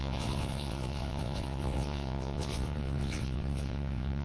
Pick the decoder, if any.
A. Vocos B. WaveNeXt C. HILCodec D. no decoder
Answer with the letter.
B